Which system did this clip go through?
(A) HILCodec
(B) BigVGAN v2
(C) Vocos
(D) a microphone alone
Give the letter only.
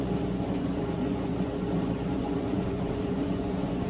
C